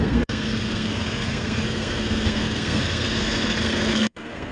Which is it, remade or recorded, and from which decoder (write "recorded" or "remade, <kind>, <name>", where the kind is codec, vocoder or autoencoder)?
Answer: remade, codec, SNAC